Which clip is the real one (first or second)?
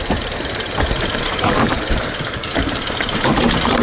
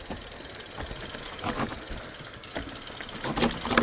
second